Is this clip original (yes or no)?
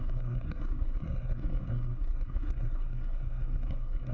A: no